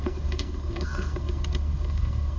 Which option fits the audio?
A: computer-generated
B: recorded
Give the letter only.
A